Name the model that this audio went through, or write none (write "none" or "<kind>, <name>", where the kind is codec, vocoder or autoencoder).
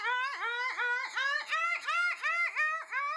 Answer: none